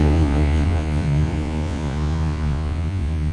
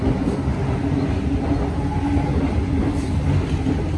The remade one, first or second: first